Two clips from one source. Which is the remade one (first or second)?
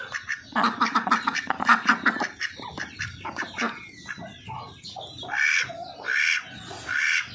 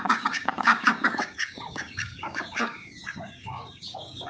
second